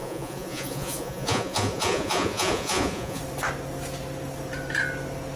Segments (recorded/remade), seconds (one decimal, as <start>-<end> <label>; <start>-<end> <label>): 0.0-3.2 remade; 3.2-5.4 recorded

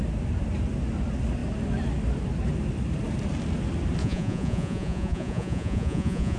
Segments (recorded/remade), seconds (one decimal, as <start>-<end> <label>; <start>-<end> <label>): 0.0-4.0 recorded; 4.0-6.4 remade

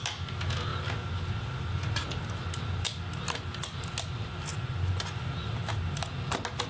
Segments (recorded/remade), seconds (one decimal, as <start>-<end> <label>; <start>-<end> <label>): 0.0-4.5 recorded; 4.5-5.2 remade; 5.2-6.7 recorded

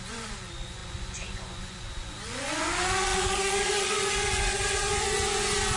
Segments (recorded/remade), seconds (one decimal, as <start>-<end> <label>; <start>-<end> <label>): 0.0-5.8 remade

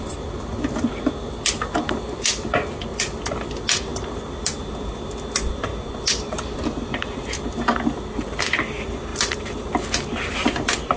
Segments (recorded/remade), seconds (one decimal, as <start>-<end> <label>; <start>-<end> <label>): 0.0-11.0 recorded

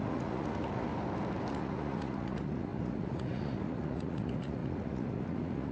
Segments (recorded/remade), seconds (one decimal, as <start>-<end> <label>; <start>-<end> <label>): 0.0-0.9 remade; 0.9-1.5 recorded; 1.5-5.7 remade

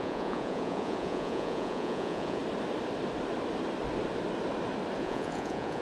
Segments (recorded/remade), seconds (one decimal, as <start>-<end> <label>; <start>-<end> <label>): 0.0-2.4 remade; 2.4-5.0 recorded; 5.0-5.8 remade